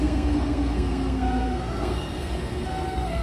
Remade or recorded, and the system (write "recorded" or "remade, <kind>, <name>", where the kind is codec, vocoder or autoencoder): remade, codec, SNAC